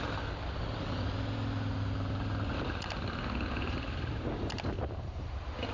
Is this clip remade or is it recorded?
recorded